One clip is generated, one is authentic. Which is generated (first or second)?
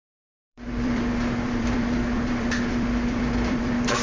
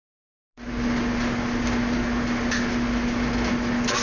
first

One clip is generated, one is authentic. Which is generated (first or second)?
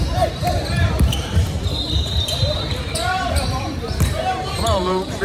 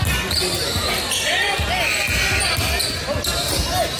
first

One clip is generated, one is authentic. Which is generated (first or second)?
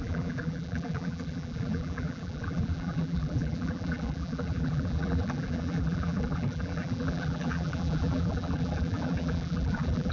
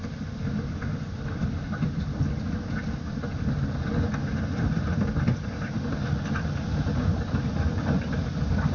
first